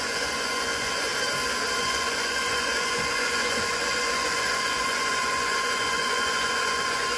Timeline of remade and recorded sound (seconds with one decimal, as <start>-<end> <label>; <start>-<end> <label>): 0.0-1.1 remade; 1.1-1.8 recorded; 1.8-7.2 remade